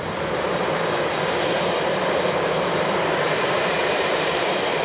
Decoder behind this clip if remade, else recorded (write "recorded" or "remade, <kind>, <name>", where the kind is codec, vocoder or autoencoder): remade, vocoder, BigVGAN v2